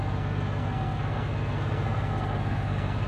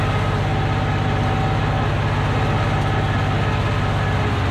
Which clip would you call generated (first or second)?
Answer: first